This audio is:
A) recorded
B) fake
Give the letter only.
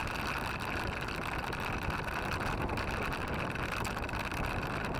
A